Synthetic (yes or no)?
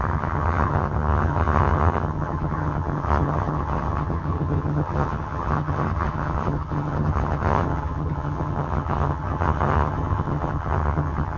yes